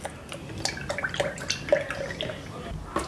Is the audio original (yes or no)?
yes